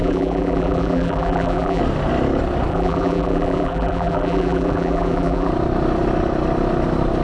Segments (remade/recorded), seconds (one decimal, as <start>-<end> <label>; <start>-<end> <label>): 0.0-1.8 remade; 1.8-2.7 recorded; 2.7-5.5 remade; 5.5-7.2 recorded